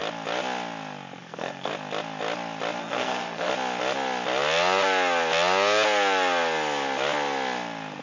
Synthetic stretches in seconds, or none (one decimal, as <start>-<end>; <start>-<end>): 1.2-1.7; 2.8-3.5

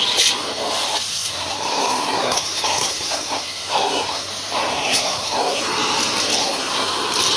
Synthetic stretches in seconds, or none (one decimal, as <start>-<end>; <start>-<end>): 1.1-4.3; 4.7-5.6; 6.4-6.9

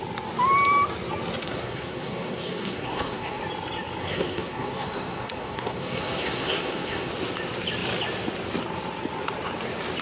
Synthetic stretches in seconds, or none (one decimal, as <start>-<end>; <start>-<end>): 1.4-3.4; 4.0-7.1

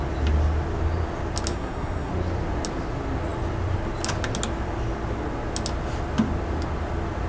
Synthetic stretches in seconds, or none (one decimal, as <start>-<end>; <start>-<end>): 1.5-2.1

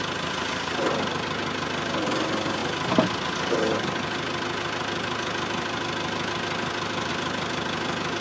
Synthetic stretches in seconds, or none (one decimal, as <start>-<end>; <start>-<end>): none

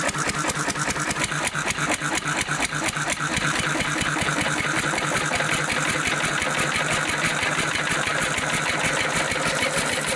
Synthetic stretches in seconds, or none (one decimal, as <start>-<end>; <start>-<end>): none